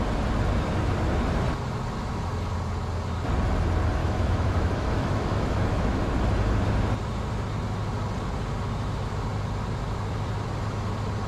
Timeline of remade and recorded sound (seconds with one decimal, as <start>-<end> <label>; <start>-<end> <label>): 0.0-4.0 recorded; 4.0-6.1 remade; 6.1-11.3 recorded